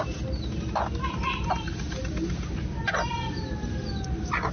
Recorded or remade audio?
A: recorded